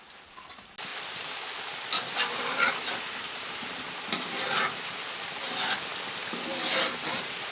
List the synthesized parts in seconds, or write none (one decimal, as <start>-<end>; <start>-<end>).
none